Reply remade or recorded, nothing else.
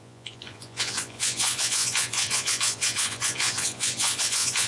remade